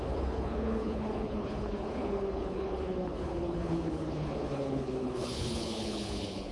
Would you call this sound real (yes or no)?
no